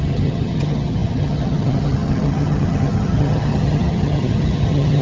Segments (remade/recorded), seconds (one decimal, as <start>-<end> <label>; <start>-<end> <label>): 0.0-5.0 remade